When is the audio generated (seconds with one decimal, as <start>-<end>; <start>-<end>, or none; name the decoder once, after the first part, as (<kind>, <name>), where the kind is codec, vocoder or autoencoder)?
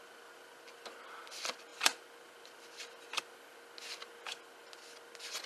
none